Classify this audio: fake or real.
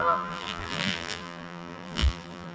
fake